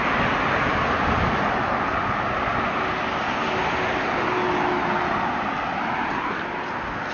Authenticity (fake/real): real